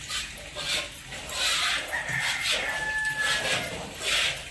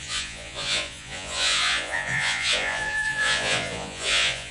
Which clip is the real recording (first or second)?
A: first